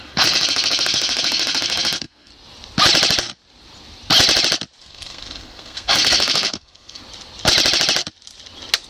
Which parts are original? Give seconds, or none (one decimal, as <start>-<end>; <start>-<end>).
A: 2.3-4.8; 7.0-8.9